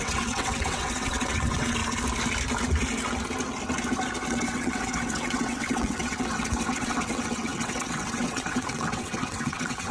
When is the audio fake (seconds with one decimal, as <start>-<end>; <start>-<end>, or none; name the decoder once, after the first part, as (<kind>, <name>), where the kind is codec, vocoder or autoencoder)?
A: 0.0-1.8 (vocoder, WaveNeXt); 4.3-9.9